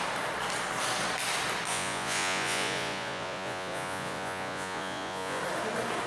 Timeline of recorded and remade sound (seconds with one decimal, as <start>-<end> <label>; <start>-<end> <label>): 0.0-1.7 recorded; 1.7-5.4 remade; 5.4-6.1 recorded